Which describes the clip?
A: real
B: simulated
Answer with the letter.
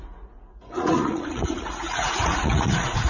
B